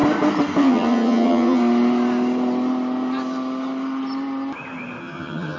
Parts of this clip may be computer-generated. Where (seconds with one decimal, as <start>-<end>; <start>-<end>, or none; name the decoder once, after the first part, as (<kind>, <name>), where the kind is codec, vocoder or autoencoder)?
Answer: 0.6-1.6 (vocoder, HiFi-GAN); 5.0-5.6

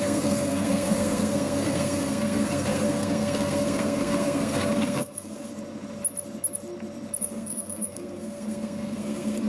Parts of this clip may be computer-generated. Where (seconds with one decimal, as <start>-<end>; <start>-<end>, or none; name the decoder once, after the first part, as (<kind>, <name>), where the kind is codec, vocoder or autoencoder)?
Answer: 0.0-5.5 (codec, SNAC); 7.2-9.5

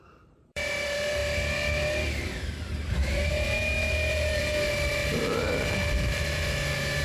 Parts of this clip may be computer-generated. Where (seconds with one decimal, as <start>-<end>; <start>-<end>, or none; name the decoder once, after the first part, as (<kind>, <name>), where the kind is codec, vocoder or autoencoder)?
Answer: 0.0-1.2 (vocoder, BigVGAN v2); 3.8-7.0

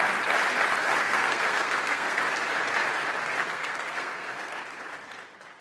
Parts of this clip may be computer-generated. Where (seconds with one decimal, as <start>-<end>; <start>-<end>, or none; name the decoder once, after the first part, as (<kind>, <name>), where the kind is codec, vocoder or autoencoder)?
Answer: 1.0-2.2 (codec, SNAC); 3.4-4.6